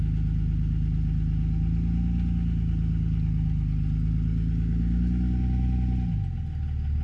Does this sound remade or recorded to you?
recorded